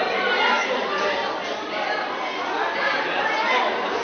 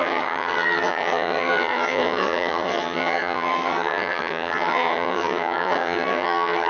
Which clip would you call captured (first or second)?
first